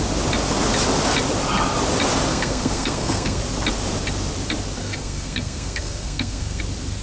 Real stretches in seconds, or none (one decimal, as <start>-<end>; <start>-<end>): 0.0-2.3; 3.4-4.8; 6.6-7.0